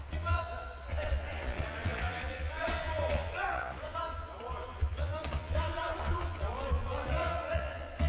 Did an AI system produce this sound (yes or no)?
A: yes